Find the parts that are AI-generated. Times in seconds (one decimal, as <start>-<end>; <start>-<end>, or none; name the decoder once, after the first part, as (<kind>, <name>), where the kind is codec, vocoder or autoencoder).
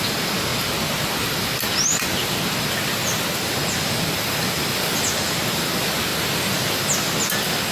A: none